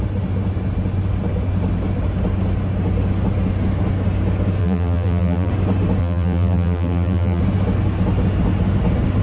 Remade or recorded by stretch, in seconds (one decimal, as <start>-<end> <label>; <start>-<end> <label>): 0.0-4.6 recorded; 4.6-5.5 remade; 5.5-6.0 recorded; 6.0-7.4 remade; 7.4-9.2 recorded

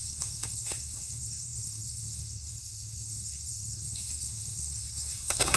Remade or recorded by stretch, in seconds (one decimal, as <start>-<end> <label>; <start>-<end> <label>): 0.0-5.6 remade

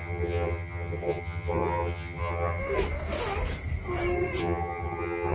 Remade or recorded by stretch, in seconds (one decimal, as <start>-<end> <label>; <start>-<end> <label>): 0.0-2.6 remade; 2.6-4.4 recorded; 4.4-5.3 remade

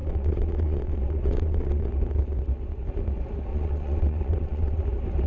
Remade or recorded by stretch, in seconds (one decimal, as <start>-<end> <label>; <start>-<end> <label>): 0.0-1.9 remade; 1.9-3.5 recorded; 3.5-4.8 remade; 4.8-5.3 recorded

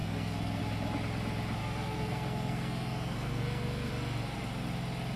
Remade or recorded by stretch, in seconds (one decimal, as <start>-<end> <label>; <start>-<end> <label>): 0.0-0.6 remade; 0.6-1.6 recorded; 1.6-3.9 remade; 3.9-5.2 recorded